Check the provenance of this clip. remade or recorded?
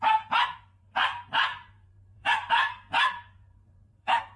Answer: remade